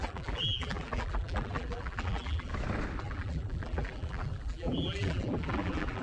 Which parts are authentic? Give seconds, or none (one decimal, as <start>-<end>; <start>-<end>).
2.5-3.0